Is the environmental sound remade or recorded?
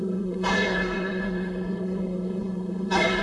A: remade